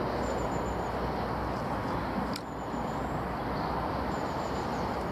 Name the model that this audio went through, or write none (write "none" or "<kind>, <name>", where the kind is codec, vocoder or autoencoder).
none